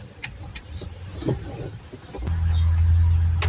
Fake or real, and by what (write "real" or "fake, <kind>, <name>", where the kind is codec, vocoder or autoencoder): real